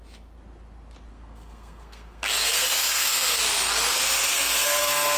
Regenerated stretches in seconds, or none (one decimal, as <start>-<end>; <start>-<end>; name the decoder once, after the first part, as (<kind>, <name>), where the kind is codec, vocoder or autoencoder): 1.1-3.4 (codec, SNAC); 4.3-5.2